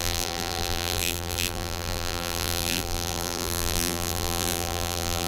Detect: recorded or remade remade